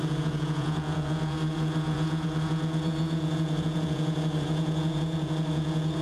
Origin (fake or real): fake